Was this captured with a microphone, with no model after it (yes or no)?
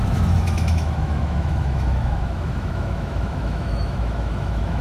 no